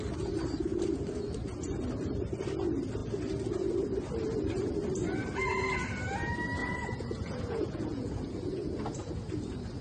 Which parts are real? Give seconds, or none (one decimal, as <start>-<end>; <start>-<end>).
0.0-6.6; 8.1-9.8